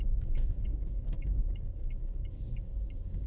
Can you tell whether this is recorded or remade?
remade